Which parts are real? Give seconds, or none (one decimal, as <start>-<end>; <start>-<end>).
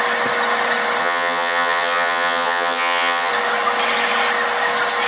0.0-1.0; 3.3-5.1